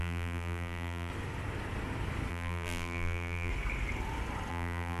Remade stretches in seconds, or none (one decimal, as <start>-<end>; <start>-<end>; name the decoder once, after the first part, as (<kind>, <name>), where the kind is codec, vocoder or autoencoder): 0.0-1.1 (vocoder, BigVGAN v2); 2.3-3.5; 4.5-5.0